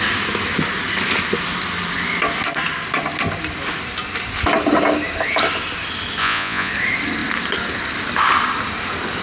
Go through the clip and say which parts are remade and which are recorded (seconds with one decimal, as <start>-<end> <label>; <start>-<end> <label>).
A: 0.0-6.2 recorded; 6.2-6.7 remade; 6.7-9.2 recorded